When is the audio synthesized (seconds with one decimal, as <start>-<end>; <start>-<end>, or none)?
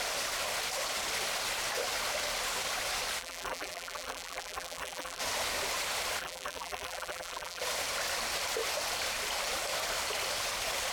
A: 3.2-5.2; 6.2-7.6